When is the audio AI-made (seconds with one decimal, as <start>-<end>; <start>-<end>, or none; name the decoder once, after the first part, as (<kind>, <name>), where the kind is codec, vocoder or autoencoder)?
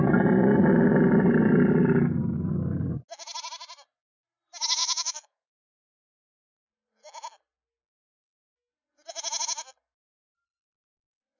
4.8-6.3 (autoencoder, DAC-VAE)